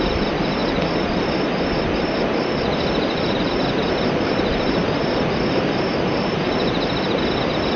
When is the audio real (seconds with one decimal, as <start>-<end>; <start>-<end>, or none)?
0.0-7.8